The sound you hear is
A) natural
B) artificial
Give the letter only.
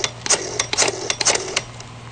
A